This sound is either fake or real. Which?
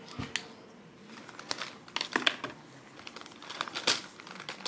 real